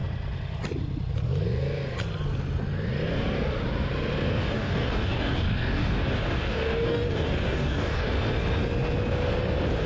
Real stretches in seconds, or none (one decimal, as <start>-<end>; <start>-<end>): 0.0-4.4; 8.1-9.9

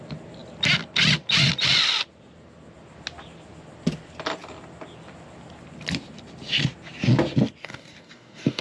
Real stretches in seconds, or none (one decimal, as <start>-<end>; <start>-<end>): 0.0-7.6